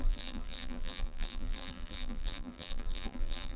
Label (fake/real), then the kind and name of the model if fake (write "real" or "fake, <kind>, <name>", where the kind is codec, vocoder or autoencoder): fake, vocoder, BigVGAN v2